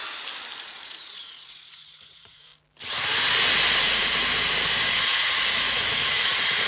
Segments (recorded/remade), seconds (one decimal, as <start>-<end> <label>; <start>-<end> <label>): 0.0-0.6 recorded; 0.6-2.5 remade; 2.5-3.8 recorded; 3.8-4.2 remade; 4.2-4.9 recorded; 4.9-6.7 remade